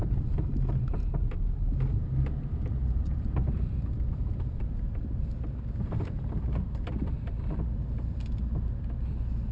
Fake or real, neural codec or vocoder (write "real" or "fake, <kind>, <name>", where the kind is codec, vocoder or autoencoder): fake, vocoder, BigVGAN v2